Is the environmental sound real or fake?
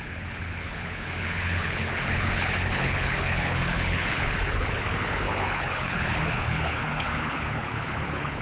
fake